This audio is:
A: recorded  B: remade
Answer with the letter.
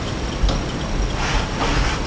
A